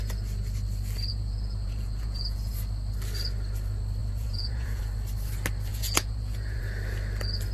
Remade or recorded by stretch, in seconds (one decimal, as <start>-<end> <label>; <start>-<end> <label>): 0.0-1.1 recorded; 1.1-2.5 remade; 2.5-4.0 recorded; 4.0-4.8 remade; 4.8-5.7 recorded; 5.7-6.6 remade; 6.6-7.5 recorded